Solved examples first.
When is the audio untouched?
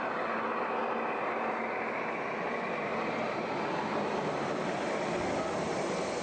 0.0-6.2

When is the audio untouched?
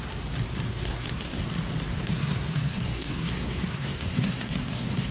0.0-0.7; 1.4-1.9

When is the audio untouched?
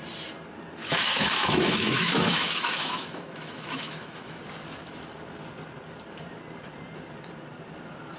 0.0-0.8; 4.4-8.2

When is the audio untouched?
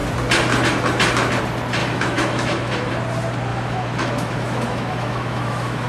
0.0-1.8; 2.9-3.5